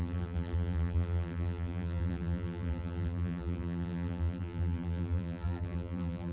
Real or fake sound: fake